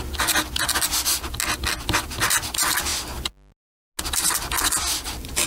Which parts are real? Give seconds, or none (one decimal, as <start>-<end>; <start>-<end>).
0.0-5.5